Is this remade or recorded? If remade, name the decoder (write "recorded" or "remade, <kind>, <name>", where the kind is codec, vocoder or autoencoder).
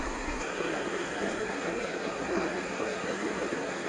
remade, codec, SNAC